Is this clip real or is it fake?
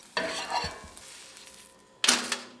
real